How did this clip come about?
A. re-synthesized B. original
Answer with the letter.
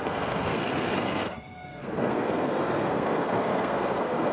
A